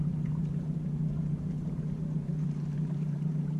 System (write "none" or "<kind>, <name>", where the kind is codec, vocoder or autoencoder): vocoder, BigVGAN v2